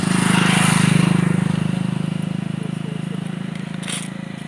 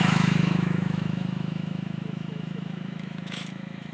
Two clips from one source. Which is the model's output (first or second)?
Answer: second